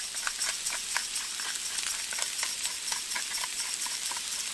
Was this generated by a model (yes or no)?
no